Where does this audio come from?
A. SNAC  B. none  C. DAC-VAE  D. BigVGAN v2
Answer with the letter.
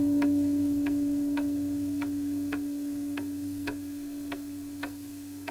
A